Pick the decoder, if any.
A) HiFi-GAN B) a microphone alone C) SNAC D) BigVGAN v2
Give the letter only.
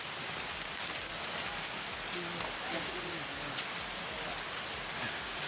B